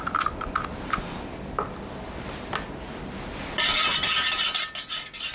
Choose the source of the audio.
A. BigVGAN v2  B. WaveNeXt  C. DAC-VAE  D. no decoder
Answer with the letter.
D